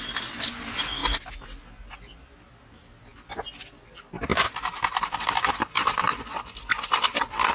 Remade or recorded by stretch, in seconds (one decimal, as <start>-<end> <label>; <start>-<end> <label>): 0.0-7.5 recorded